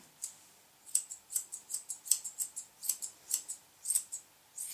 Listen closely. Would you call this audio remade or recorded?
recorded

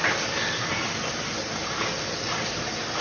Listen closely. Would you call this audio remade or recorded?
recorded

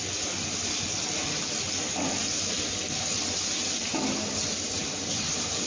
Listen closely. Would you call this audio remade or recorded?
recorded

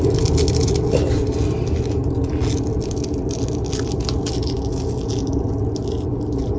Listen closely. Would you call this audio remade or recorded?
recorded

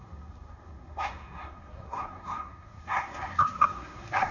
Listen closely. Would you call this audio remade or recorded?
remade